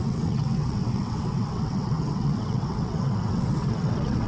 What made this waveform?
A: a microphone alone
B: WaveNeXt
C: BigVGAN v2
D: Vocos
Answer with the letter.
B